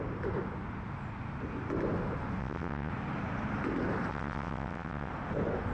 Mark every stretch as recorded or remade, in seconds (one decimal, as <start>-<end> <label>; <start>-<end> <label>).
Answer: 0.0-2.4 recorded; 2.4-2.9 remade; 2.9-4.1 recorded; 4.1-5.1 remade; 5.1-5.7 recorded